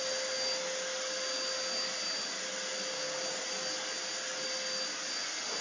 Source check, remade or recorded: recorded